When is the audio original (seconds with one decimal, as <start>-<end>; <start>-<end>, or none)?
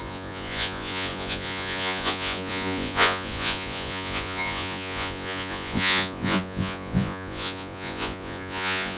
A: none